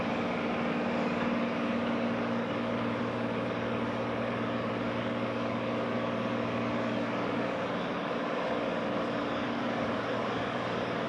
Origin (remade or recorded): remade